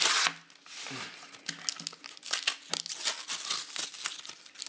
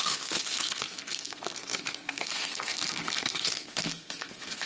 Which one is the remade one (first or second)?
second